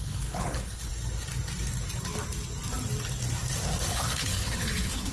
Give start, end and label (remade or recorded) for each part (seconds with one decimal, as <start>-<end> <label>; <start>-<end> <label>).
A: 0.0-0.9 remade; 0.9-3.9 recorded; 3.9-5.1 remade